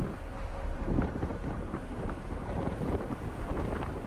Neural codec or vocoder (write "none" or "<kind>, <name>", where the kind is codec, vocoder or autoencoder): vocoder, BigVGAN v2